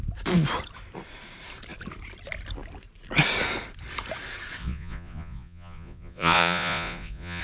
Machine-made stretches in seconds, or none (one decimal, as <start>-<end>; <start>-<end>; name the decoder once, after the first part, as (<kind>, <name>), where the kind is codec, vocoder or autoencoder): 4.6-7.4 (vocoder, Vocos)